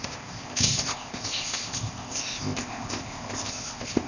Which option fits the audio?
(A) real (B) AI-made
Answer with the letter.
B